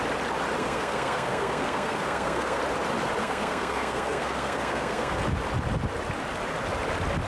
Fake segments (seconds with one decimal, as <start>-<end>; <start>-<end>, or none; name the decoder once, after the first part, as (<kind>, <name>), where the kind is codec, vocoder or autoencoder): 0.6-2.6 (codec, SNAC); 3.2-5.2